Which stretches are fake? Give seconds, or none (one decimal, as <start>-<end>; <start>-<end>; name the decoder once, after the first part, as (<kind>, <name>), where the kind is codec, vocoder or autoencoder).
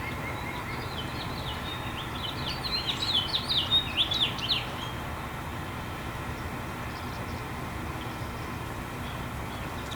1.1-3.4 (vocoder, BigVGAN v2); 5.5-6.1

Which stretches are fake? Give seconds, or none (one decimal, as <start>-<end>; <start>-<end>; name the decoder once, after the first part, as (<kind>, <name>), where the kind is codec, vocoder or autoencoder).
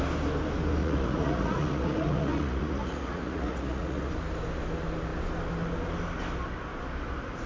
0.8-4.1 (vocoder, Vocos)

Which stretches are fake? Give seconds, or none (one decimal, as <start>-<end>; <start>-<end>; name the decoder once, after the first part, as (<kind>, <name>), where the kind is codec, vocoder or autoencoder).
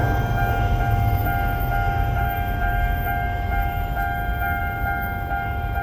0.0-5.8 (autoencoder, DAC-VAE)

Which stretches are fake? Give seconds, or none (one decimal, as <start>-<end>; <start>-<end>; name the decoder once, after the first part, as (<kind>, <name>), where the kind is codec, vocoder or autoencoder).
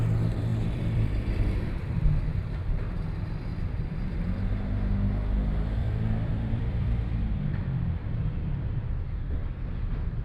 0.5-2.7 (vocoder, BigVGAN v2); 3.5-4.1; 5.8-8.8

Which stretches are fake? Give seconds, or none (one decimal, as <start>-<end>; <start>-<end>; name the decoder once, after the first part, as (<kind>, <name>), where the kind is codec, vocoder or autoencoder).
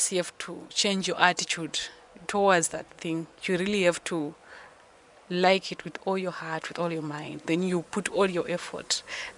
0.7-9.4 (vocoder, Vocos)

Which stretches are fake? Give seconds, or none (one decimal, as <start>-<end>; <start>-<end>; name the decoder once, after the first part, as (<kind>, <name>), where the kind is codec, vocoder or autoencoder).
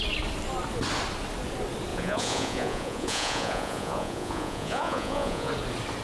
1.9-5.5 (vocoder, Vocos)